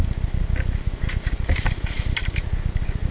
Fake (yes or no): no